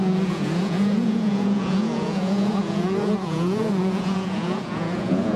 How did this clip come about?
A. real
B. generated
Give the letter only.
B